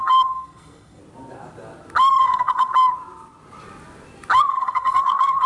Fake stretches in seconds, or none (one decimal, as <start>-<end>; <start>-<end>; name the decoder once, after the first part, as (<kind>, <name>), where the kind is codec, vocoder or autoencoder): 0.0-1.0 (codec, SNAC); 2.2-2.7; 4.4-5.5